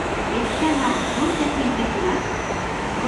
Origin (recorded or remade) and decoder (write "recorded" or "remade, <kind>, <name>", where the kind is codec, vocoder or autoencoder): remade, autoencoder, DAC-VAE